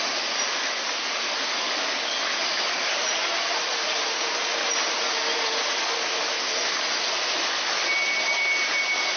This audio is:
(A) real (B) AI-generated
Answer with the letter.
A